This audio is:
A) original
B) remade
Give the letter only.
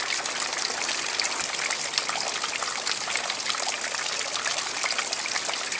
A